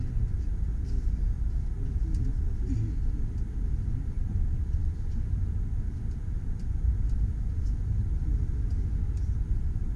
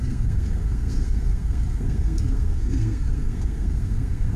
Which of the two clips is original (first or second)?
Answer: first